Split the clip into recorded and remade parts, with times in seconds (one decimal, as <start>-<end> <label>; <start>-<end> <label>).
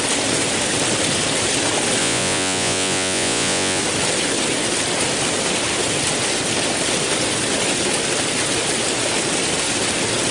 0.0-2.0 recorded; 2.0-3.8 remade; 3.8-10.3 recorded